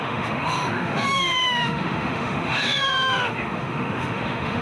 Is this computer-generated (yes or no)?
yes